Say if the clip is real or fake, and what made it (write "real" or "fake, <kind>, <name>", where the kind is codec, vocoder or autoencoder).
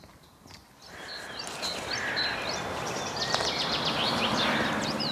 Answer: fake, vocoder, BigVGAN v2